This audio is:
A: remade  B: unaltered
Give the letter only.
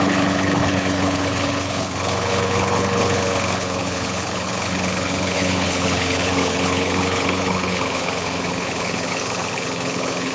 A